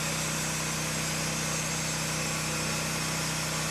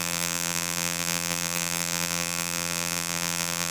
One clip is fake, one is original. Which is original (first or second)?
first